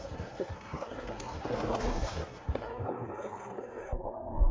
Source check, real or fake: fake